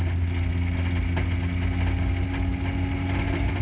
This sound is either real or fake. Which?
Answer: real